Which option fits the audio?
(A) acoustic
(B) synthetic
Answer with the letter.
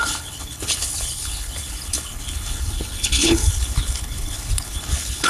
B